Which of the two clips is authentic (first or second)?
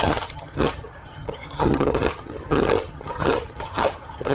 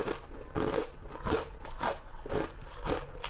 second